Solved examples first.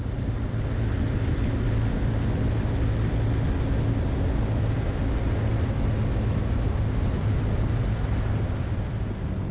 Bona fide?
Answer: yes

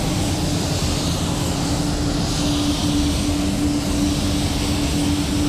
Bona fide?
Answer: yes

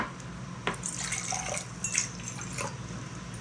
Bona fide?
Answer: yes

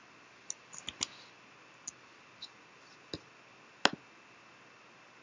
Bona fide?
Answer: yes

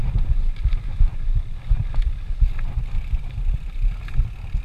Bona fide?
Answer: yes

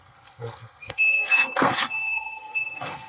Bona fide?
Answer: no